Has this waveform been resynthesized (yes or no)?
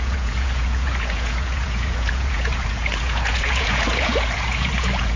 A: yes